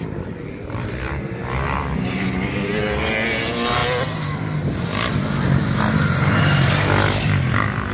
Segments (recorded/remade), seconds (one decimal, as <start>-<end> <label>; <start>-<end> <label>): 0.0-7.9 recorded